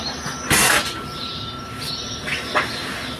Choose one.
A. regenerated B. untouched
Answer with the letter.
B